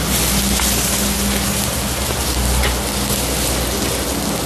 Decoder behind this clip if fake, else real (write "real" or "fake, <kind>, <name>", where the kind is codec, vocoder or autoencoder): real